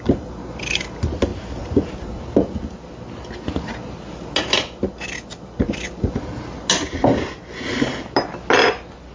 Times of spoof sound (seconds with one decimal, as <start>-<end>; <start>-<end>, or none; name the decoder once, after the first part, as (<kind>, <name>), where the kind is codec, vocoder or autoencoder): none

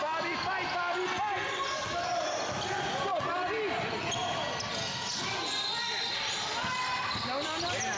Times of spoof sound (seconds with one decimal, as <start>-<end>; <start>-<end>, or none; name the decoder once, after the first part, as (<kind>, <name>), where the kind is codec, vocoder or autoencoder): none

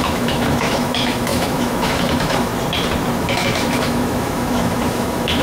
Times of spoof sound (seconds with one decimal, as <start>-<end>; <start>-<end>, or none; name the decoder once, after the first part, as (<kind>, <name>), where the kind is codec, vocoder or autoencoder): 0.0-2.5 (autoencoder, DAC-VAE); 3.2-5.4

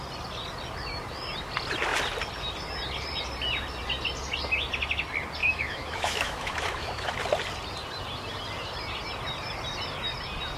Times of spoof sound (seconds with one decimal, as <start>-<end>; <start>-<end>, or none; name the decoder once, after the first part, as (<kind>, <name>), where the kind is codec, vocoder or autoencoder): 5.4-7.1 (autoencoder, DAC-VAE)

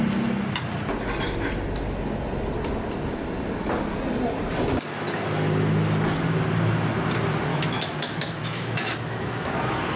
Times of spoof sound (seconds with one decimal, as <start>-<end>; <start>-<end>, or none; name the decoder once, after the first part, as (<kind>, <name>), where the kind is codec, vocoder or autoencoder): 7.5-9.5 (autoencoder, DAC-VAE)

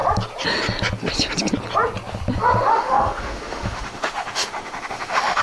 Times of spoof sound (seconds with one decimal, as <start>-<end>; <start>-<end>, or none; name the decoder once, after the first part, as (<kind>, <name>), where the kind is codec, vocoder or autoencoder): 2.7-5.4 (autoencoder, DAC-VAE)

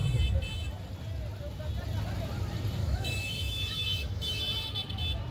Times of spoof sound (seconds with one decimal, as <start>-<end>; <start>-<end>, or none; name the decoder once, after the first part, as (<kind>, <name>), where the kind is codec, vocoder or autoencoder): 2.8-4.4 (autoencoder, DAC-VAE)

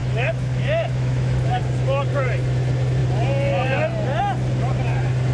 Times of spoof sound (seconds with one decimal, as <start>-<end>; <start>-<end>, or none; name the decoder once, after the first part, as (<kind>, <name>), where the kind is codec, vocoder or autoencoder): 0.0-1.6 (autoencoder, DAC-VAE)